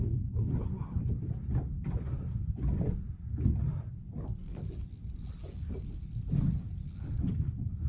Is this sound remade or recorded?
recorded